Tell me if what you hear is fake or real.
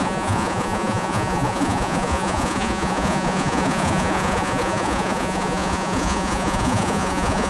fake